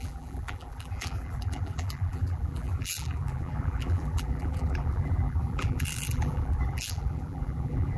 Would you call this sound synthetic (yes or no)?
yes